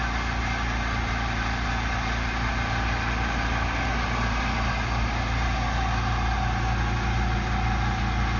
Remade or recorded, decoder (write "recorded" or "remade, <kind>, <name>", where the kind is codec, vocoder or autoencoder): recorded